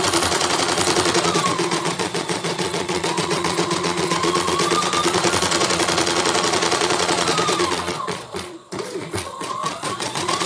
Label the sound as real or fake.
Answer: fake